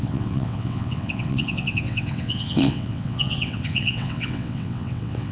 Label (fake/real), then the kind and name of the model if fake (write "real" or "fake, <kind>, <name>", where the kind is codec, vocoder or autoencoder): fake, vocoder, WaveNeXt